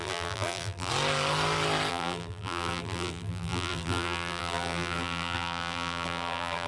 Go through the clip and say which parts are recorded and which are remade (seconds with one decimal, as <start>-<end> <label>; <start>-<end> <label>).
0.0-0.9 remade; 0.9-1.9 recorded; 1.9-6.7 remade